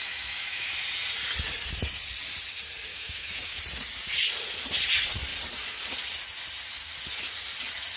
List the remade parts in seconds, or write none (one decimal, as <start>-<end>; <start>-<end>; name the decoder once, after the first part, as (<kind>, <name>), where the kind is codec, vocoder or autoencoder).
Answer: 0.0-0.7 (autoencoder, DAC-VAE); 2.9-3.6